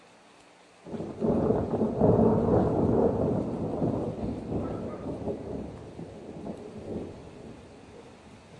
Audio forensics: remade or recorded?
recorded